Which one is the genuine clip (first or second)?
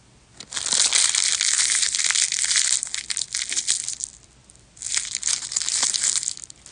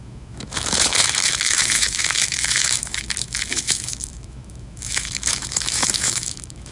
first